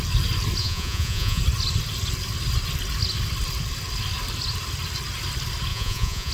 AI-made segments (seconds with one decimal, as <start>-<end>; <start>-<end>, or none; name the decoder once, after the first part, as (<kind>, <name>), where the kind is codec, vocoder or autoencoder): 0.6-1.4 (vocoder, Vocos); 5.7-6.3